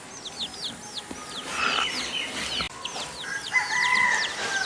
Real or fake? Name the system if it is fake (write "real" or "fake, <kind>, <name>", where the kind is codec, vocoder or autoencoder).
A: real